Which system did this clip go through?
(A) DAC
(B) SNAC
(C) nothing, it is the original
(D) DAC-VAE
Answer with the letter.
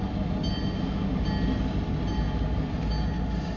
C